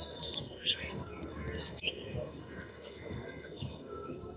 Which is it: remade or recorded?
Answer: remade